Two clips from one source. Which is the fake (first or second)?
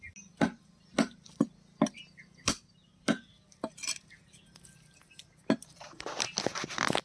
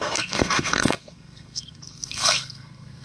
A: second